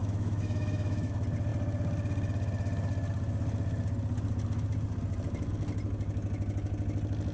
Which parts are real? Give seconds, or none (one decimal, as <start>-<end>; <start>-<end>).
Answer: 1.1-7.3